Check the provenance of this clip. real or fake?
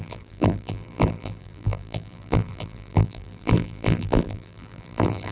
fake